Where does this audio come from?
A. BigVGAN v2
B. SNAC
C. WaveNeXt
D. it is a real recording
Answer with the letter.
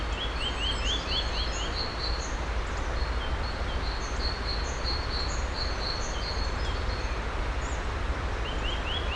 D